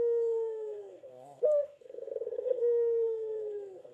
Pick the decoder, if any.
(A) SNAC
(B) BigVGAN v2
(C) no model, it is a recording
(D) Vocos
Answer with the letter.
A